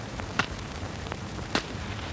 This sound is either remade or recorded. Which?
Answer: remade